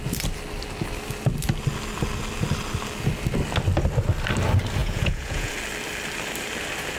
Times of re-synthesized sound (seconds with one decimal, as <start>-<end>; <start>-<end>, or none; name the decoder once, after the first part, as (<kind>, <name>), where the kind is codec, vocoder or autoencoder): 4.8-5.5 (vocoder, Vocos)